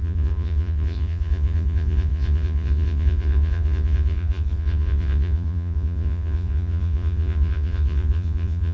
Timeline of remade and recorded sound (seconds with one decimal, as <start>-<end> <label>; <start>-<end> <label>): 0.0-8.7 remade

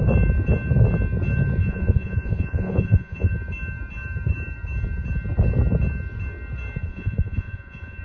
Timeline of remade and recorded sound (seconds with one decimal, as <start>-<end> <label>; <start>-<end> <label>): 0.0-1.6 recorded; 1.6-3.3 remade; 3.3-6.8 recorded; 6.8-8.0 remade